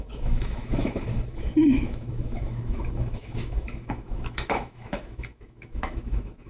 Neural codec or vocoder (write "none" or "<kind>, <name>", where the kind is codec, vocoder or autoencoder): autoencoder, DAC-VAE